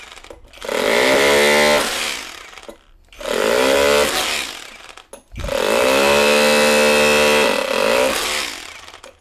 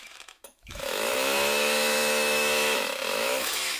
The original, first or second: first